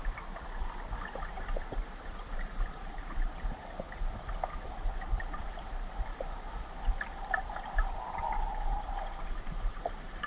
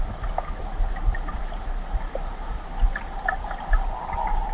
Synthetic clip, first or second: first